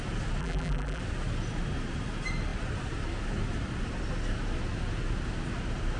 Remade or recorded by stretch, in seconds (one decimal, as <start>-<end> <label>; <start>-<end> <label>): 0.0-0.4 recorded; 0.4-1.0 remade; 1.0-6.0 recorded